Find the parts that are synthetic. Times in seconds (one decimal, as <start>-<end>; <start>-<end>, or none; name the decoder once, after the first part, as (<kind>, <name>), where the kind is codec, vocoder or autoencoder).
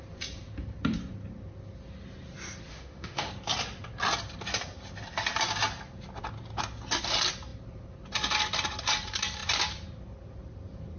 2.7-3.3 (autoencoder, DAC-VAE)